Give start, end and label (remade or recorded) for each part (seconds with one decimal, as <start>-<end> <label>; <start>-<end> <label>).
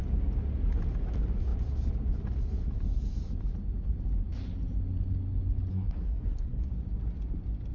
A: 0.0-5.7 recorded; 5.7-6.6 remade; 6.6-7.7 recorded